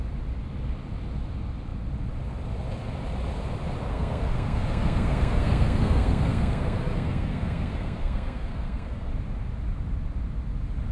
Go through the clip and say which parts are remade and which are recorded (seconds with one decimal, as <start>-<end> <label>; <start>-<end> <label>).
0.0-3.9 recorded; 3.9-9.1 remade; 9.1-10.9 recorded